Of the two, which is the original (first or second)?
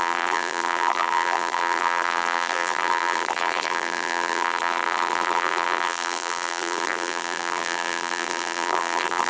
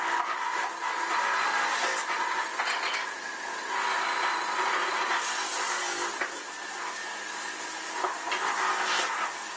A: second